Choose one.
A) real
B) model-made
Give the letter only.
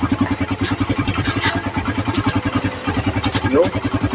A